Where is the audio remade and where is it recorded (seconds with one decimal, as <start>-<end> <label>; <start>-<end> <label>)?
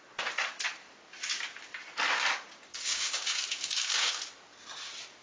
0.0-2.7 recorded; 2.7-4.2 remade; 4.2-5.2 recorded